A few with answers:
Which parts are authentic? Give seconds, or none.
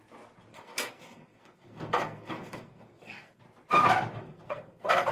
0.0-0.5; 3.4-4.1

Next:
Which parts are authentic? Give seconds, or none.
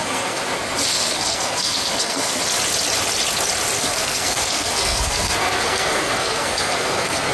0.4-0.9; 2.4-3.8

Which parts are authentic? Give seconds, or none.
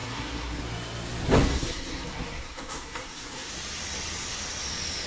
0.6-1.5; 3.5-5.1